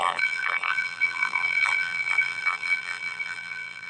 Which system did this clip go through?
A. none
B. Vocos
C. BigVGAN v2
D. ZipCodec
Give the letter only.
C